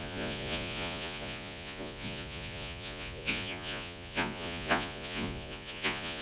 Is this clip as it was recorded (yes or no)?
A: no